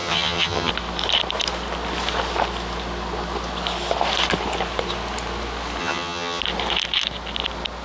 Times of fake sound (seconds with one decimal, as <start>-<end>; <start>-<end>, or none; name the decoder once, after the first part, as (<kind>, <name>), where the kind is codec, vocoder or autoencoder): 0.0-0.7 (vocoder, HiFi-GAN); 5.8-6.4